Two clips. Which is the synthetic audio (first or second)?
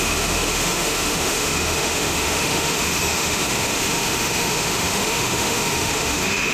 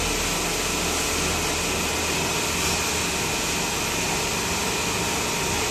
first